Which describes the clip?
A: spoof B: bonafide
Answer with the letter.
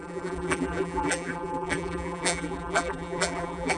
A